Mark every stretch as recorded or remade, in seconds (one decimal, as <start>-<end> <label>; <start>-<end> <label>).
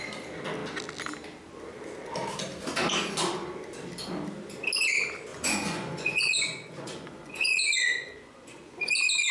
0.0-5.3 recorded; 5.3-8.9 remade; 8.9-9.3 recorded